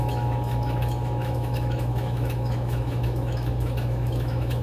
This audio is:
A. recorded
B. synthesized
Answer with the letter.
B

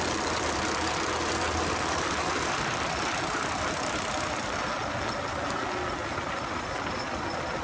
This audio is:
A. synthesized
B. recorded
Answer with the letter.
B